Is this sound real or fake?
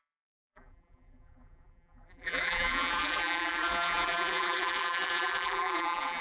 fake